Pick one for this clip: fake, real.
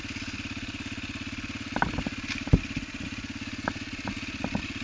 real